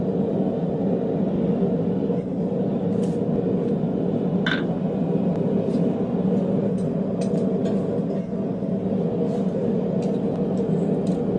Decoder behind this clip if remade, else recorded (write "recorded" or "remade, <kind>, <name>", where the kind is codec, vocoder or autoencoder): recorded